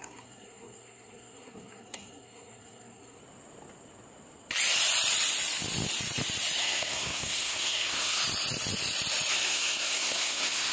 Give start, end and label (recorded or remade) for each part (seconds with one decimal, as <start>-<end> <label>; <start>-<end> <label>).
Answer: 0.0-3.2 remade; 3.2-6.6 recorded; 6.6-8.2 remade; 8.2-9.3 recorded; 9.3-10.7 remade